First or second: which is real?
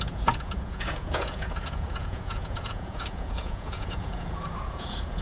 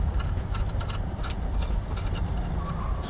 second